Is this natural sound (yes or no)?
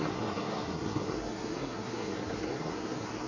no